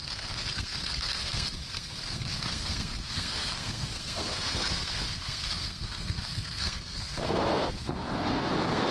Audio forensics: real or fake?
fake